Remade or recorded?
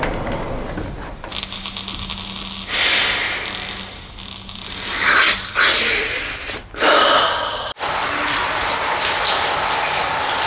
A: recorded